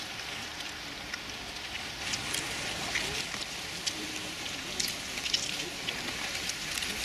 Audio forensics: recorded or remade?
recorded